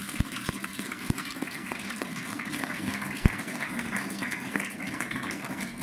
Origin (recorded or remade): remade